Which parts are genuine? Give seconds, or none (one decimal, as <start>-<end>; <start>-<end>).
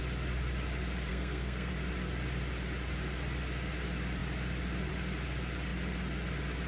0.0-1.1; 1.7-6.7